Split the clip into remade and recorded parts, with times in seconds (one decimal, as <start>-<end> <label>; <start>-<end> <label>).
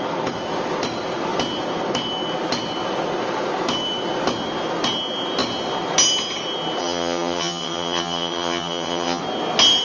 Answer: 0.0-6.8 recorded; 6.8-9.2 remade; 9.2-9.8 recorded